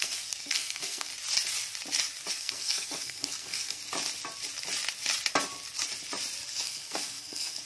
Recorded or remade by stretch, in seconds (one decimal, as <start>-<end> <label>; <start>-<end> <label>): 0.0-1.1 remade; 1.1-2.3 recorded; 2.3-3.8 remade; 3.8-6.5 recorded; 6.5-7.7 remade